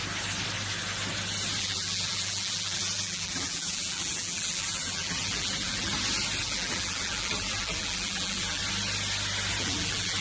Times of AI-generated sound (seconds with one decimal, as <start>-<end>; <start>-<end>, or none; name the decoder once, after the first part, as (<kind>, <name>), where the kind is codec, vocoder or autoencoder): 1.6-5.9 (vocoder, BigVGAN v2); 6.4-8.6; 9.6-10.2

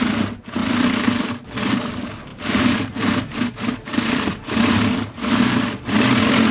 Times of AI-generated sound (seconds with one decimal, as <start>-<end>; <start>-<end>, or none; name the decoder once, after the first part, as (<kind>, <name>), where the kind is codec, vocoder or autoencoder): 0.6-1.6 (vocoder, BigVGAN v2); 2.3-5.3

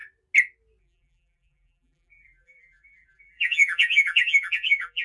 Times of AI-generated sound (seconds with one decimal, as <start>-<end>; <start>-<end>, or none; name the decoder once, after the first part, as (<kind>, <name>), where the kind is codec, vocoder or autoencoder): 0.8-5.0 (vocoder, BigVGAN v2)

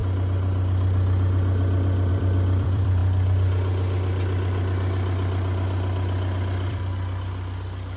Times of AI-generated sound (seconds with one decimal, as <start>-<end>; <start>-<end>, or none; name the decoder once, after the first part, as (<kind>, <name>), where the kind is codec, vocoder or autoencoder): 2.1-3.0 (vocoder, BigVGAN v2); 6.7-8.0

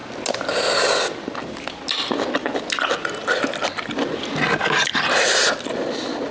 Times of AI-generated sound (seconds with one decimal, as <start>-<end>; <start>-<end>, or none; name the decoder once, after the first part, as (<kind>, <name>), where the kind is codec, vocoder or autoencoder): none

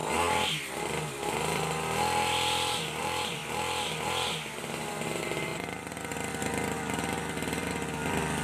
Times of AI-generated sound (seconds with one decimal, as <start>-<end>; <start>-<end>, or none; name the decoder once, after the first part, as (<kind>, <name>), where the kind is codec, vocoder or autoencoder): 1.1-3.4 (vocoder, BigVGAN v2); 4.0-8.4